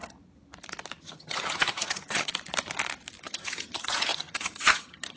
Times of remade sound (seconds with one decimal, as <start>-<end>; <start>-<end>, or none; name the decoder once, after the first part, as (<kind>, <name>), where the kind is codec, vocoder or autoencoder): 1.0-2.3 (vocoder, HiFi-GAN); 3.2-5.2